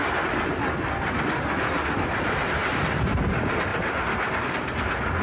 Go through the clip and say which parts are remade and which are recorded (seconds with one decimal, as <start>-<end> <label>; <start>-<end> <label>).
0.0-5.2 recorded